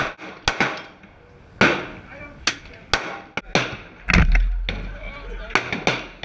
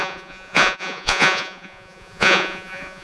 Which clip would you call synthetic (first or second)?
second